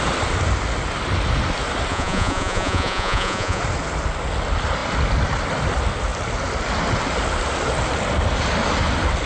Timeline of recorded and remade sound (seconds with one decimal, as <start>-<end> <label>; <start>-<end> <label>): 0.0-1.9 recorded; 1.9-3.6 remade; 3.6-9.3 recorded